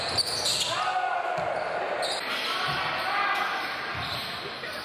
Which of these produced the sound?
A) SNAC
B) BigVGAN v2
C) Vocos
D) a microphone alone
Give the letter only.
D